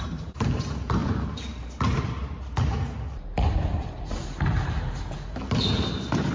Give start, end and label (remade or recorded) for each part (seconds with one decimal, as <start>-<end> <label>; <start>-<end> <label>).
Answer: 0.0-6.3 remade